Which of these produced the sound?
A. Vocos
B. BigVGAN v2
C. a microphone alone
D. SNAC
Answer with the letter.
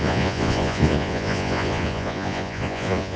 A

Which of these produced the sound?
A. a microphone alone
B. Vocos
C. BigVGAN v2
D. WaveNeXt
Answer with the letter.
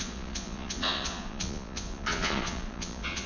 B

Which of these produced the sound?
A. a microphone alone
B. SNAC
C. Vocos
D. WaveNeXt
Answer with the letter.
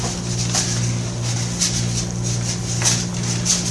A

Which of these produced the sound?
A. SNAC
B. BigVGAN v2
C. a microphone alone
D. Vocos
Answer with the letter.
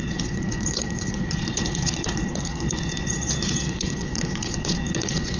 D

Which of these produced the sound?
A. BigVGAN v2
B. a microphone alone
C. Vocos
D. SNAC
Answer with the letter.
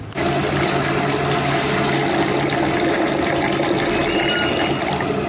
B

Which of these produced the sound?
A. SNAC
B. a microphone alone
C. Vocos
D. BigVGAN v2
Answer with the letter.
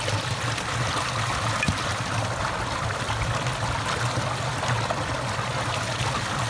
B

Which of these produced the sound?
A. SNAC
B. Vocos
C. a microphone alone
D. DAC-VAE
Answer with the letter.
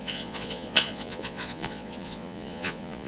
B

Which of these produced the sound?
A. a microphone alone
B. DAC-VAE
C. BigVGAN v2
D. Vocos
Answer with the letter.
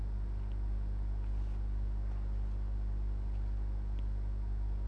A